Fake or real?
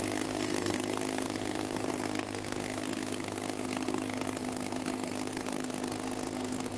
fake